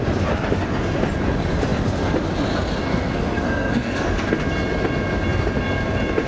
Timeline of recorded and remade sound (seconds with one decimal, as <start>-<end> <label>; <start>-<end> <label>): 0.0-2.9 recorded; 2.9-4.3 remade; 4.3-6.3 recorded

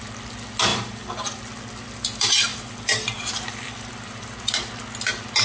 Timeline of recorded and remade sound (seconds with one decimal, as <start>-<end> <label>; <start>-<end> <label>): 0.0-0.7 recorded; 0.7-1.4 remade; 1.4-2.5 recorded; 2.5-4.5 remade; 4.5-5.4 recorded

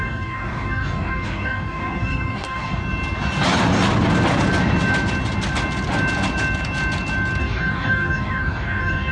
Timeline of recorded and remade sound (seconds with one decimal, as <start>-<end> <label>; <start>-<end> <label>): 0.0-2.8 remade; 2.8-7.4 recorded; 7.4-9.1 remade